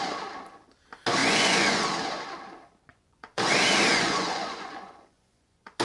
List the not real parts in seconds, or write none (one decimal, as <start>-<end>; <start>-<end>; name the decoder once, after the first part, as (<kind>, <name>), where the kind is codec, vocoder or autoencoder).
1.2-1.8 (vocoder, Vocos); 2.9-3.5; 3.9-5.8